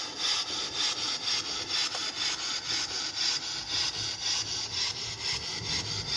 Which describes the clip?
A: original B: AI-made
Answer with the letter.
A